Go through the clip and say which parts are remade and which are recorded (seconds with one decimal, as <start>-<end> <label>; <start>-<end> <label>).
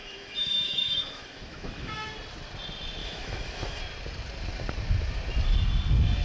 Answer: 0.0-1.9 remade; 1.9-3.0 recorded; 3.0-3.8 remade; 3.8-6.2 recorded